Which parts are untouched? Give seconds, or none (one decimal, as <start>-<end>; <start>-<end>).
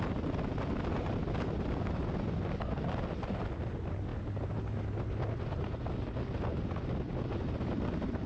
0.0-8.3